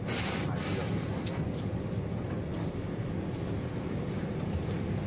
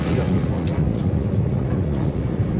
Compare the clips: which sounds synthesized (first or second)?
second